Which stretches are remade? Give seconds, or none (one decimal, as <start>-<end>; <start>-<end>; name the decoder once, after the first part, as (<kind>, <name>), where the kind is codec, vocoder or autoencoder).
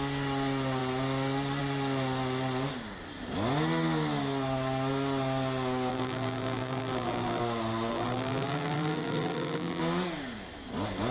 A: 5.9-7.4 (vocoder, BigVGAN v2); 7.9-9.8